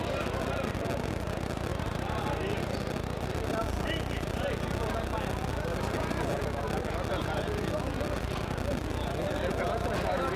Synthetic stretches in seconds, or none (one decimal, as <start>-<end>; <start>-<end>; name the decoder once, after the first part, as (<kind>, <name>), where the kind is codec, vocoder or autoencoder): 1.7-2.2 (vocoder, BigVGAN v2)